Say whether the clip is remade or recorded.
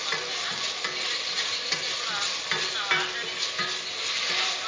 recorded